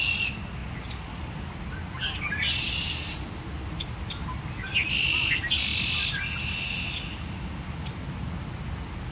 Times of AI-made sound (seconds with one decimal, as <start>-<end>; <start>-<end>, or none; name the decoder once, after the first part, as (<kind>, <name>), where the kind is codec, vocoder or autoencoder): none